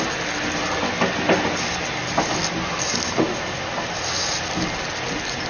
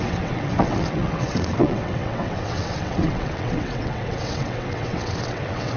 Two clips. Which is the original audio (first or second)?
first